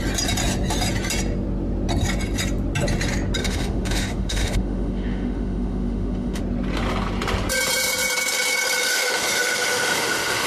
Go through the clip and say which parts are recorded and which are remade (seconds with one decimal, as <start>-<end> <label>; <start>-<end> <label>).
0.0-3.4 recorded; 3.4-6.4 remade; 6.4-8.9 recorded; 8.9-10.5 remade